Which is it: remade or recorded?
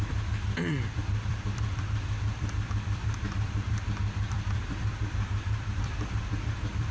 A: remade